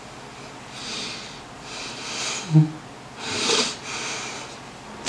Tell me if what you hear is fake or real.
real